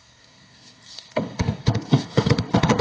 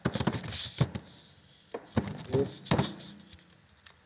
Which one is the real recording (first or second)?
second